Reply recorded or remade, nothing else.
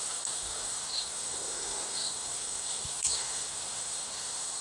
remade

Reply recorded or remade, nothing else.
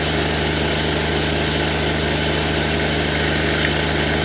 recorded